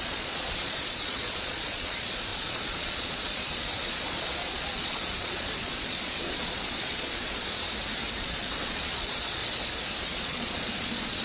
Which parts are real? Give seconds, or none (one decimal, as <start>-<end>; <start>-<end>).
7.6-8.2; 9.4-10.0